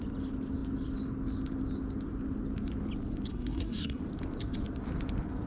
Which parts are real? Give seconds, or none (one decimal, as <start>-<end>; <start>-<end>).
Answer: 0.0-3.3; 4.0-5.5